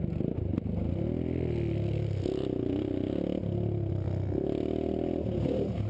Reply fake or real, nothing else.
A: real